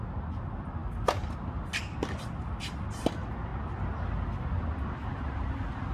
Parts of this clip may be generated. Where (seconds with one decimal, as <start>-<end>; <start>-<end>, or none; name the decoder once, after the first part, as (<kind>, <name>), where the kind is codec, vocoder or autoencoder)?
none

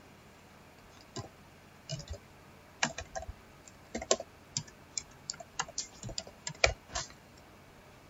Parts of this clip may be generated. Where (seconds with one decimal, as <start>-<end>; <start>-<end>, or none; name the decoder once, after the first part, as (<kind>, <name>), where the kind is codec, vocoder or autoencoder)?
0.0-1.9 (vocoder, BigVGAN v2); 5.4-7.3

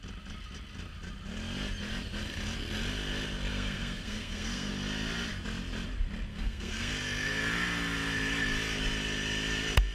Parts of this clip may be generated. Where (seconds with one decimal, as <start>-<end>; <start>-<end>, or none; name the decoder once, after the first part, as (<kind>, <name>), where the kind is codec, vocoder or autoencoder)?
3.5-4.7 (codec, SNAC); 6.3-6.9